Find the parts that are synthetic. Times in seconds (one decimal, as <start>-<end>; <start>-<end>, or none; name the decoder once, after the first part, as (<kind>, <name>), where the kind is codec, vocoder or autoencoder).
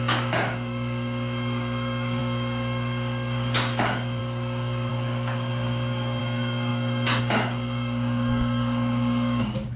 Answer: 0.0-9.8 (codec, DAC)